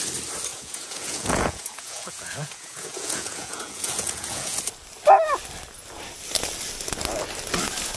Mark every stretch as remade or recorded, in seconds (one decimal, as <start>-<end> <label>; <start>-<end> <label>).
0.0-0.5 recorded; 0.5-4.6 remade; 4.6-8.0 recorded